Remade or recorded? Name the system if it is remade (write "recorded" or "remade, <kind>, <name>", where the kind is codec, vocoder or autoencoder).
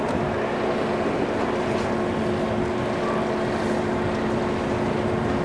recorded